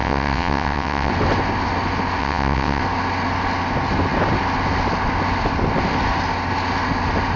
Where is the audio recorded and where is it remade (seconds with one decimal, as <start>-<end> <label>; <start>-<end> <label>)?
0.0-1.1 remade; 1.1-2.2 recorded; 2.2-2.8 remade; 2.8-7.4 recorded